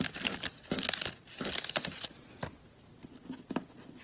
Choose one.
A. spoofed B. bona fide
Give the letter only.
B